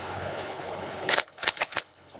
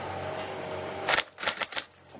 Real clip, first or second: second